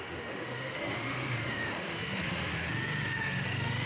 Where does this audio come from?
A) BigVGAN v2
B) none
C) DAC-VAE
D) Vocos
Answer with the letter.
C